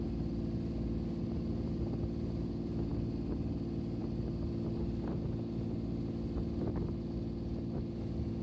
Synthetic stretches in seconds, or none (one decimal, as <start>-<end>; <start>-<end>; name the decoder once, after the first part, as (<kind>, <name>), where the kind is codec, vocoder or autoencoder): none